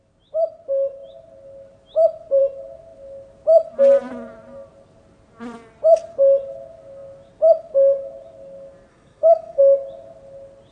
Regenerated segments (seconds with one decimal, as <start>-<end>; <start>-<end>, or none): 8.9-9.6